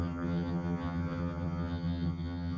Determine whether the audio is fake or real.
fake